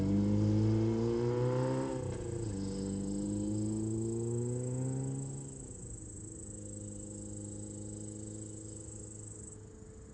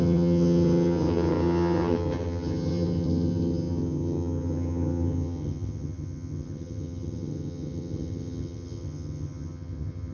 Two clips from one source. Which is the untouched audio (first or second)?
first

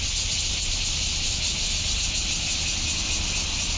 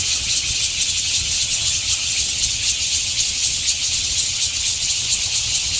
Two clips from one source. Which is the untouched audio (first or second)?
first